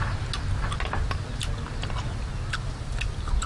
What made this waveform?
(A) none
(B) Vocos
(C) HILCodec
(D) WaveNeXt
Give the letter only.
A